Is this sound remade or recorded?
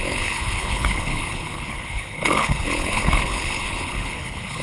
remade